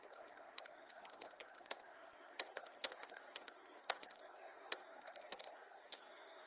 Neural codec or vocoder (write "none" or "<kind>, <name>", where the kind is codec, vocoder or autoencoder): codec, SNAC